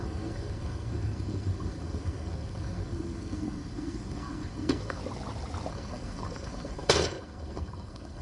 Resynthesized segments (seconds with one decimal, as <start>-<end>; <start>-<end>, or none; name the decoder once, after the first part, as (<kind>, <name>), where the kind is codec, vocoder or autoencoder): 0.0-5.0 (codec, SNAC); 5.7-8.2